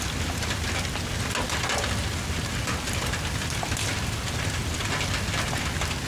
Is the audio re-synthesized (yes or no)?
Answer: no